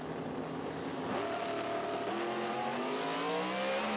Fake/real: real